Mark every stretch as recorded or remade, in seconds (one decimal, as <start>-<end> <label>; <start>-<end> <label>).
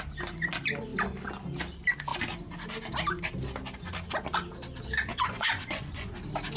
0.0-5.1 recorded; 5.1-6.1 remade; 6.1-6.6 recorded